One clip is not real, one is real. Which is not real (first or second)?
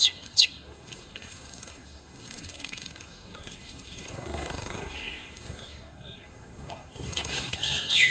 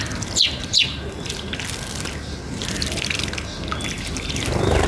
first